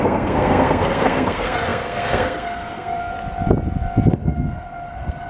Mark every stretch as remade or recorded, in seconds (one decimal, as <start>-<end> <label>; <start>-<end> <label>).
0.0-3.1 remade; 3.1-4.1 recorded; 4.1-5.3 remade

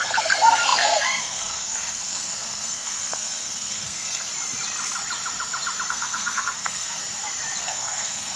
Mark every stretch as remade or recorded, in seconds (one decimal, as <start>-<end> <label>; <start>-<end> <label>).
0.0-4.3 remade; 4.3-5.9 recorded; 5.9-7.0 remade; 7.0-7.6 recorded; 7.6-8.4 remade

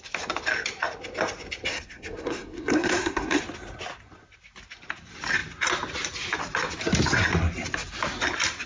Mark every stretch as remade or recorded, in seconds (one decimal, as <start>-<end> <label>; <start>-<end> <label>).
0.0-1.7 recorded; 1.7-3.4 remade; 3.4-8.7 recorded

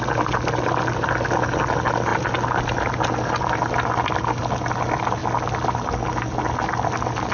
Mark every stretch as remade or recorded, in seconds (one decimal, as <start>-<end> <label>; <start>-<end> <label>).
0.0-7.3 recorded

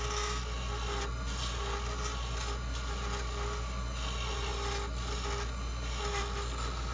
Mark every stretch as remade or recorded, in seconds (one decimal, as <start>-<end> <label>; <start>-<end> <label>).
0.0-6.9 recorded

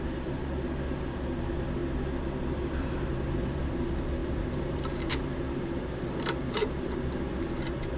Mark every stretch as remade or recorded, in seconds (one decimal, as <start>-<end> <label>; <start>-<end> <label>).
0.0-0.4 remade; 0.4-1.0 recorded; 1.0-1.8 remade; 1.8-2.5 recorded; 2.5-8.0 remade

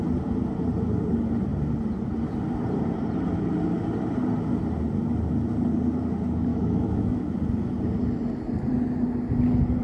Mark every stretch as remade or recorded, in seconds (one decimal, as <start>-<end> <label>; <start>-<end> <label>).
0.0-6.5 recorded; 6.5-7.2 remade; 7.2-9.8 recorded